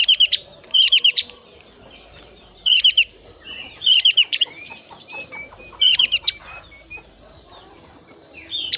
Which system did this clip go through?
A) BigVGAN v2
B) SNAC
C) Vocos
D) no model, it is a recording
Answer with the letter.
A